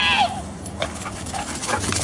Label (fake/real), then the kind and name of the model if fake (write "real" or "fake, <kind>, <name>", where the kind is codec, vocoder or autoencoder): real